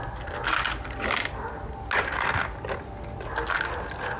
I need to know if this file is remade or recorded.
recorded